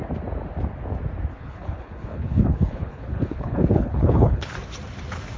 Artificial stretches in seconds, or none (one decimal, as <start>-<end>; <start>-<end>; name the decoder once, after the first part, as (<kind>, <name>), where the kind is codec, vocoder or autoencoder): 1.3-4.5 (codec, HILCodec)